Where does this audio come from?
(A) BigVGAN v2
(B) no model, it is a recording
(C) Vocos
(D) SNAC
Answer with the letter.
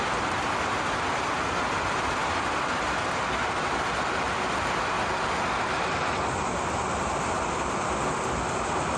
B